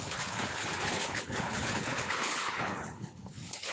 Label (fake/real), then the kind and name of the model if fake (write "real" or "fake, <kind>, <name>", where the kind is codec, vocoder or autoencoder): fake, codec, HILCodec